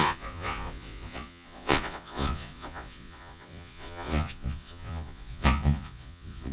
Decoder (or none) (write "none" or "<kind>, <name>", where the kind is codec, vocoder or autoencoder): vocoder, Vocos